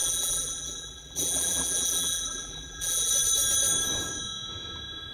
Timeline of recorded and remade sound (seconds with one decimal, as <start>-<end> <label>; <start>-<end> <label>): 0.0-3.1 remade; 3.1-5.1 recorded